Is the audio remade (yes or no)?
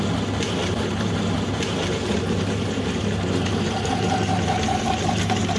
yes